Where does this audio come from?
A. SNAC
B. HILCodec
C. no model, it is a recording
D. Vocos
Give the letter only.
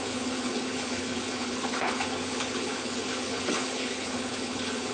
B